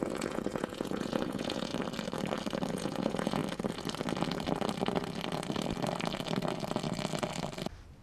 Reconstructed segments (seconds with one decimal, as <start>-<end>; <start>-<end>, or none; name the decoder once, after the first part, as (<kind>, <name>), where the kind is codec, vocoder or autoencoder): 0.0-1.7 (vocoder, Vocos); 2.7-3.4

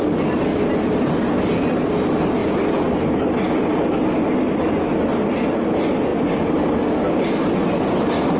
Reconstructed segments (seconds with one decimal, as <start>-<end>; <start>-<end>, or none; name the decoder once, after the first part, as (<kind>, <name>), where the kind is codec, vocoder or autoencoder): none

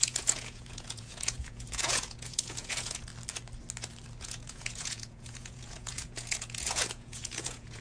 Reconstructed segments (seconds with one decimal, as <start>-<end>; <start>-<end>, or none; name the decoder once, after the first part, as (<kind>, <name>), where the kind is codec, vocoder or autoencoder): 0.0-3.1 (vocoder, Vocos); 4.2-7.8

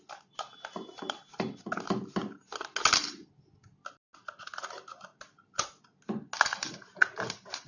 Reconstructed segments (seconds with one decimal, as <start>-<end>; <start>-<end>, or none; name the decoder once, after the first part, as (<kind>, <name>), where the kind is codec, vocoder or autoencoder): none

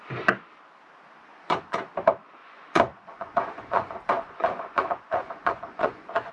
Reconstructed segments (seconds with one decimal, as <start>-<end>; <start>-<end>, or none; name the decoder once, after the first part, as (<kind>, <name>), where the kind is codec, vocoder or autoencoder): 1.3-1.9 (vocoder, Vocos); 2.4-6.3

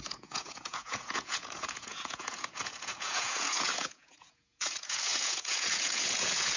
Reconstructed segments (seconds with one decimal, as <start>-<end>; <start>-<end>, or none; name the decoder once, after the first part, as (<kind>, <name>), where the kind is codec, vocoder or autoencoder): 0.0-6.6 (vocoder, Vocos)

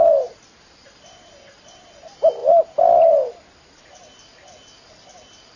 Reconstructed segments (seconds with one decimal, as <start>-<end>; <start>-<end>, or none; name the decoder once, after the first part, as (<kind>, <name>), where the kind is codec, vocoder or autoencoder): none

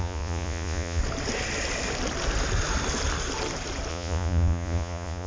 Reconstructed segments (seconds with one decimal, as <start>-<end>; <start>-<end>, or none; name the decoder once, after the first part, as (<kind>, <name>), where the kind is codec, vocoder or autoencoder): 0.0-1.0 (vocoder, Vocos); 3.9-5.3